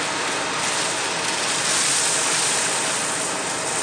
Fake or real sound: real